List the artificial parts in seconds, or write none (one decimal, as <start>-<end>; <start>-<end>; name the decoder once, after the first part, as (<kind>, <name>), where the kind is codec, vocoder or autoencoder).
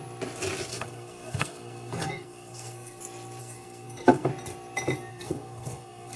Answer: 0.7-3.0 (codec, SNAC); 3.4-4.3; 5.1-6.2